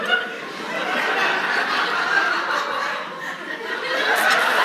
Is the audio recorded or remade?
recorded